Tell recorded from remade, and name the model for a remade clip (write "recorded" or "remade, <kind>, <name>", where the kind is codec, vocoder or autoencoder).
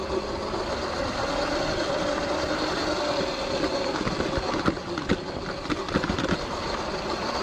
recorded